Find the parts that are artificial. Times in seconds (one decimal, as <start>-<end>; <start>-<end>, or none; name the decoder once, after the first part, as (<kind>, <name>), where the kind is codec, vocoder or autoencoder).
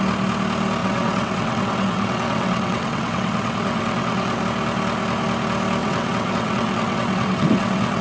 0.8-4.4 (vocoder, WaveNeXt); 5.8-8.0